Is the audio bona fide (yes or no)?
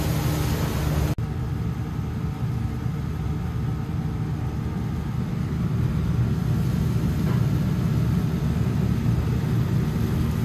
yes